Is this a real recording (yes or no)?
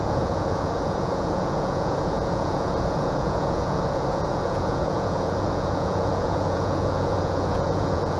no